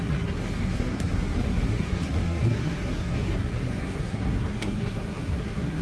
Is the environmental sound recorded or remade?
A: remade